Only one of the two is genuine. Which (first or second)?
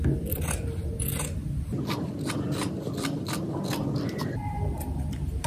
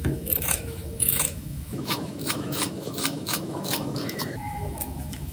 first